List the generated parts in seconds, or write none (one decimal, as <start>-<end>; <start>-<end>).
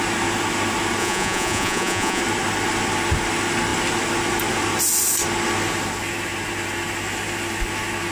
1.0-2.2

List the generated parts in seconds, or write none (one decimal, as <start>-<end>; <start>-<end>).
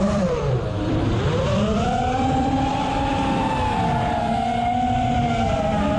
0.0-2.7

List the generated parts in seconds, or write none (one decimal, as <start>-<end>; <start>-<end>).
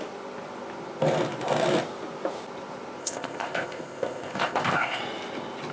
3.0-5.0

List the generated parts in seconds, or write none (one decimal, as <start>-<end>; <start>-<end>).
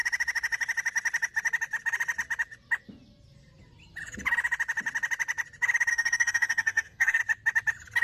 5.9-7.2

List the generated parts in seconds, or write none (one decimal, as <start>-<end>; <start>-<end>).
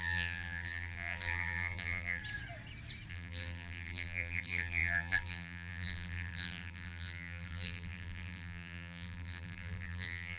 0.0-2.2; 3.1-10.4